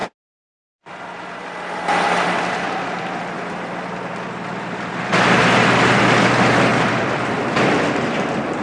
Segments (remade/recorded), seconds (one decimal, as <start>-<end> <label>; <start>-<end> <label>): 0.0-6.7 recorded; 6.7-7.4 remade; 7.4-8.6 recorded